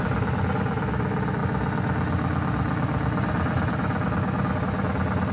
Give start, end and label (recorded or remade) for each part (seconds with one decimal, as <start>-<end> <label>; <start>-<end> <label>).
0.0-5.3 recorded